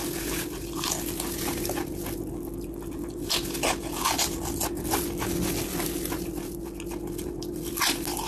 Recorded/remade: recorded